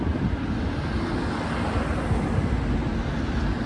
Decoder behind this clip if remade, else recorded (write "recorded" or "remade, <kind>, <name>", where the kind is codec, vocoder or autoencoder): recorded